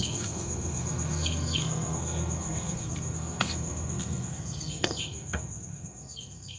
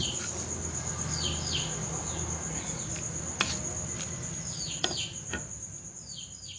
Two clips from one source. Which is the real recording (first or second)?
second